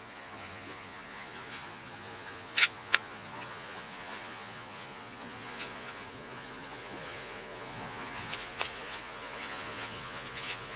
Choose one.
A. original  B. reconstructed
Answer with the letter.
B